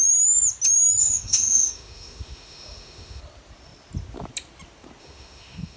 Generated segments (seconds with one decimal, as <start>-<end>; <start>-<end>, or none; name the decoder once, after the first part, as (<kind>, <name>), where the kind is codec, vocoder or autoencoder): 1.0-3.2 (autoencoder, DAC-VAE); 5.0-5.8